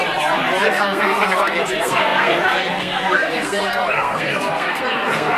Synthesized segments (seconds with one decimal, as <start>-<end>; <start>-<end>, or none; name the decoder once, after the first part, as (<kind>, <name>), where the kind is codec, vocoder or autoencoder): 0.6-5.4 (codec, SNAC)